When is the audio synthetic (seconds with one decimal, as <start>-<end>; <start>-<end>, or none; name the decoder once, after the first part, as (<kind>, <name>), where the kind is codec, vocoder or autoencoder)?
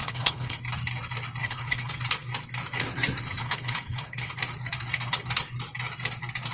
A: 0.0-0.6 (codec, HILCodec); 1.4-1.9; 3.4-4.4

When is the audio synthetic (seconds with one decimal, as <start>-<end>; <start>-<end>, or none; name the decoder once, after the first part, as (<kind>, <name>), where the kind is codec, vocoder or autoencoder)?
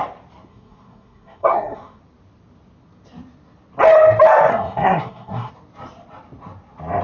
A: 0.5-2.0 (codec, SNAC); 4.5-5.5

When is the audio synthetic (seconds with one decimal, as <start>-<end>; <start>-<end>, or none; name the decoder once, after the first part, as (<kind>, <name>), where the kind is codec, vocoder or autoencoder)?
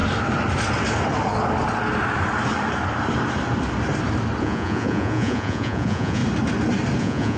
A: 4.4-6.2 (vocoder, Vocos); 7.0-7.4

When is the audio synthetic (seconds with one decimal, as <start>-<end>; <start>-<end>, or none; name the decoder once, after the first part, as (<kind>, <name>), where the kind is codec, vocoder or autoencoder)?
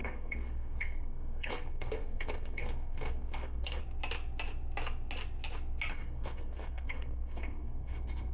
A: 0.0-3.8 (codec, SNAC); 5.9-8.3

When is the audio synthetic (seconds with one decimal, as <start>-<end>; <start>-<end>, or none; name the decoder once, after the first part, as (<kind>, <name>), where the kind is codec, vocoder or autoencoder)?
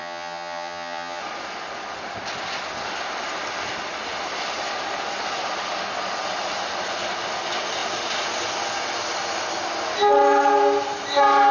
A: 0.0-1.2 (vocoder, HiFi-GAN)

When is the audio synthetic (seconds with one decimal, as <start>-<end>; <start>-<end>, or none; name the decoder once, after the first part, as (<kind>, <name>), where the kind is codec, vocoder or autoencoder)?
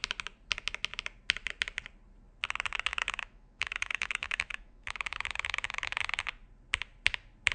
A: 2.9-6.0 (autoencoder, DAC-VAE)